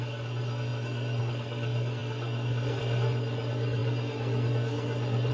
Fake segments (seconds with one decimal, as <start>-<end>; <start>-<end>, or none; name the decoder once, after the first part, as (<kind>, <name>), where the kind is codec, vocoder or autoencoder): 0.0-5.3 (codec, SNAC)